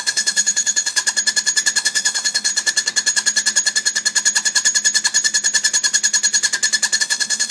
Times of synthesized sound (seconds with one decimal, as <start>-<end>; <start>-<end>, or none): 0.0-1.0; 1.8-2.5; 7.0-7.5